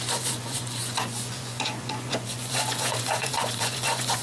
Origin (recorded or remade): remade